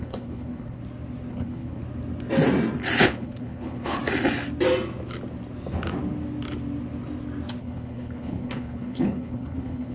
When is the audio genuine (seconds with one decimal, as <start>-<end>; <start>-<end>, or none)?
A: 0.8-1.3; 1.8-3.0; 4.0-7.6